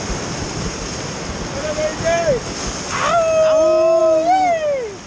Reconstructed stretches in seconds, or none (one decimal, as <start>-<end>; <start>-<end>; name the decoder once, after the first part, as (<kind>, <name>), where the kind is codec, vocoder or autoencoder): none